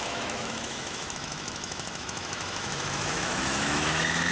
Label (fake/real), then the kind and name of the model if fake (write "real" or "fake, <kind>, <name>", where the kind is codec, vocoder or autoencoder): fake, autoencoder, DAC-VAE